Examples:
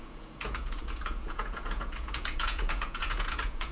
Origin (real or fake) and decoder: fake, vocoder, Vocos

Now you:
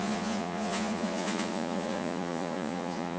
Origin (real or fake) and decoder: fake, vocoder, Vocos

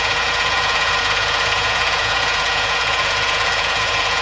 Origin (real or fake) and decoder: fake, vocoder, Vocos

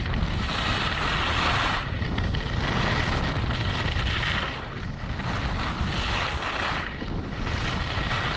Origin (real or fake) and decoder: real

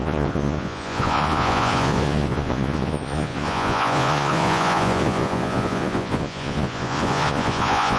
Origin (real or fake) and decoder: fake, vocoder, Vocos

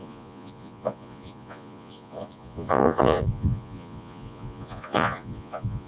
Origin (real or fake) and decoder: fake, vocoder, Vocos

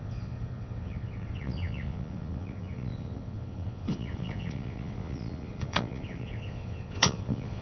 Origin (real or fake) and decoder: fake, vocoder, Vocos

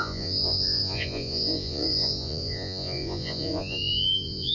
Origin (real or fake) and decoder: fake, vocoder, Vocos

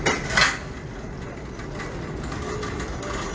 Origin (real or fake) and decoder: real